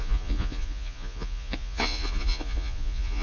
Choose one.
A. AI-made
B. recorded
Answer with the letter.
A